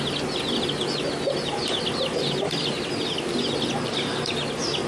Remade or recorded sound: recorded